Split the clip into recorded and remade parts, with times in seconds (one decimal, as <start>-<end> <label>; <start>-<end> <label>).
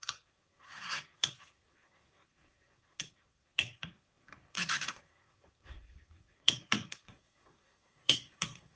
0.0-8.8 remade